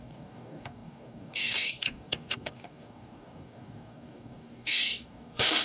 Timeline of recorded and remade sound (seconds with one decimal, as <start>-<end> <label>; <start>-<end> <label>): 0.0-5.6 remade